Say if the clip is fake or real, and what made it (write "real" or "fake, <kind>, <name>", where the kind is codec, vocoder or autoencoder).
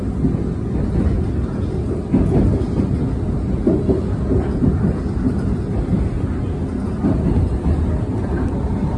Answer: real